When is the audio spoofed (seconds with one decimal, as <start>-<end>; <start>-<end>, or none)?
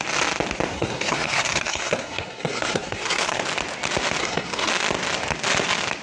0.7-3.4; 4.2-4.7